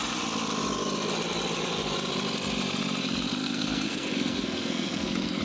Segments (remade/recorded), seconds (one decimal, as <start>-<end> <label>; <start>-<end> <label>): 0.0-3.4 recorded; 3.4-5.4 remade